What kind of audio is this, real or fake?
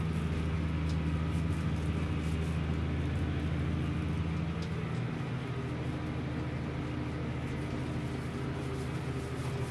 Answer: real